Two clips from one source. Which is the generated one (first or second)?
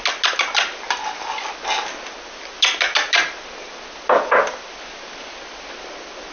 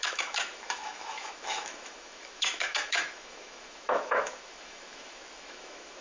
second